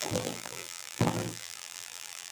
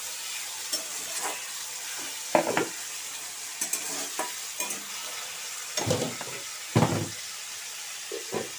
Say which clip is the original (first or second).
second